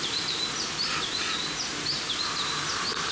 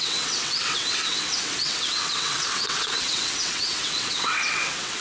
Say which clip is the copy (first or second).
second